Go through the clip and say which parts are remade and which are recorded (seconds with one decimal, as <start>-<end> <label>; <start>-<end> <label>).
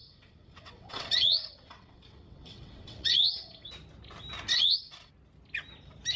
0.0-3.7 remade; 3.7-4.5 recorded; 4.5-5.1 remade; 5.1-6.2 recorded